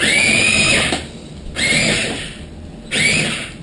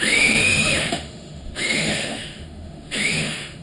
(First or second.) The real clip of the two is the first